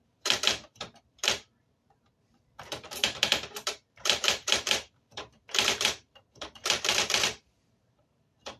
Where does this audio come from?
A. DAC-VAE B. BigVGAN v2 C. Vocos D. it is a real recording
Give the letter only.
B